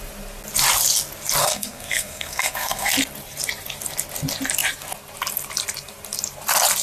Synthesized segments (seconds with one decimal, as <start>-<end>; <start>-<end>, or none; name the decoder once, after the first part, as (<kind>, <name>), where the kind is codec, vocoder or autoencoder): 1.4-2.9 (codec, SNAC)